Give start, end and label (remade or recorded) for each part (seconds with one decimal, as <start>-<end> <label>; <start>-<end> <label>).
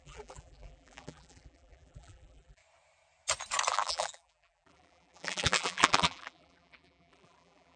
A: 0.0-2.6 remade; 2.6-3.7 recorded; 3.7-7.8 remade